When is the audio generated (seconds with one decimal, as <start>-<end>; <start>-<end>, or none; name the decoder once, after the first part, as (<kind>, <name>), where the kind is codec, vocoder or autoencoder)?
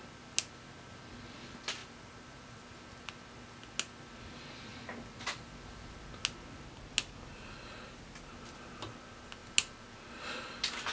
1.8-2.7 (vocoder, BigVGAN v2)